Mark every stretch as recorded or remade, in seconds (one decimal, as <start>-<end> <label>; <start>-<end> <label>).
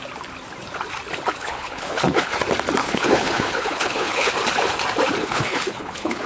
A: 0.0-1.4 recorded; 1.4-2.4 remade; 2.4-2.8 recorded; 2.8-4.3 remade; 4.3-5.2 recorded; 5.2-6.3 remade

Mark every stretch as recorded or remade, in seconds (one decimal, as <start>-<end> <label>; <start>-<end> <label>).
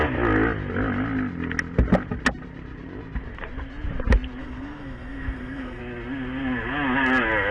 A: 0.0-4.4 recorded; 4.4-5.8 remade; 5.8-7.5 recorded